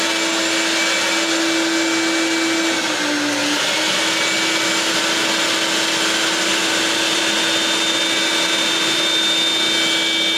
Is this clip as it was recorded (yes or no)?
yes